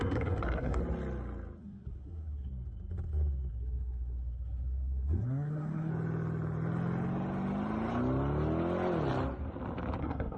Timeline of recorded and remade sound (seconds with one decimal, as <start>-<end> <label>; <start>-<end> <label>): 0.0-0.8 remade; 0.8-1.6 recorded; 1.6-2.5 remade; 2.5-3.5 recorded; 3.5-5.9 remade; 5.9-10.0 recorded; 10.0-10.4 remade

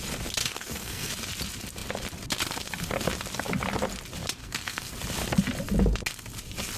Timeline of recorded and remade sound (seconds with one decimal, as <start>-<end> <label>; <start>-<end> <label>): 0.0-0.4 recorded; 0.4-1.1 remade; 1.1-4.4 recorded; 4.4-4.9 remade; 4.9-6.8 recorded

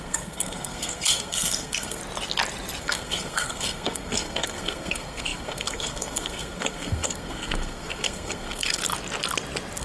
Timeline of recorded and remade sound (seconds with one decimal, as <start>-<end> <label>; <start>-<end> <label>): 0.0-2.0 remade; 2.0-2.8 recorded; 2.8-8.8 remade; 8.8-9.8 recorded

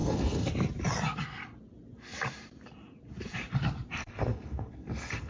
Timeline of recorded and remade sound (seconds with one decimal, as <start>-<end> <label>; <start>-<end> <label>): 0.0-0.5 remade; 0.5-4.0 recorded; 4.0-5.3 remade

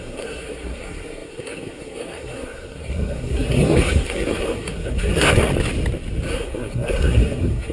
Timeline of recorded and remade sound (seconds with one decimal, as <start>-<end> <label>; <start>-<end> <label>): 0.0-5.5 remade; 5.5-6.3 recorded; 6.3-7.7 remade